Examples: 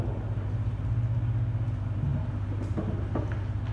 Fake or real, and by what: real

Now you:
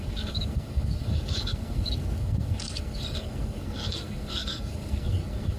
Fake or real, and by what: fake, codec, SNAC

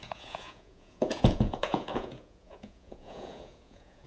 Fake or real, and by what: fake, vocoder, Vocos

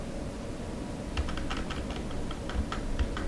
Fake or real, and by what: real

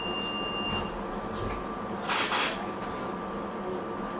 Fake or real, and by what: real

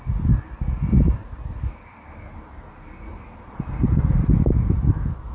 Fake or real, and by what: real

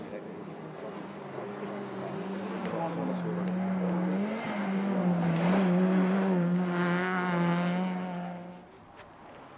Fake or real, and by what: real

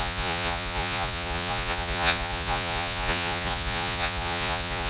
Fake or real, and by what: fake, vocoder, Vocos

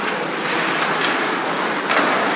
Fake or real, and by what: fake, vocoder, BigVGAN v2